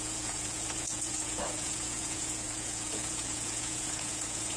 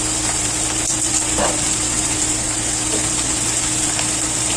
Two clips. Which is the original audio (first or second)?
second